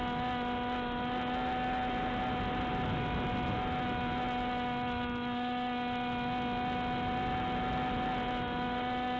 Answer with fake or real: real